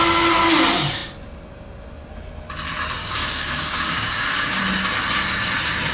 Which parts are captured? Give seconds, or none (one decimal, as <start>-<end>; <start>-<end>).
0.0-3.0; 4.6-5.9